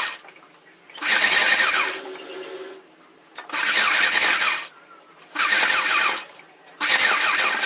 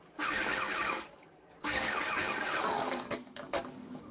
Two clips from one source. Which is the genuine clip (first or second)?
first